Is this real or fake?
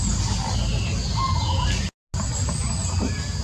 real